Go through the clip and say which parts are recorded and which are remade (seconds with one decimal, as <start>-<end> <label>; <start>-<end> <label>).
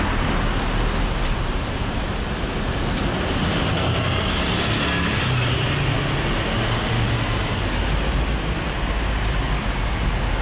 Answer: 0.0-3.7 recorded; 3.7-4.3 remade; 4.3-10.4 recorded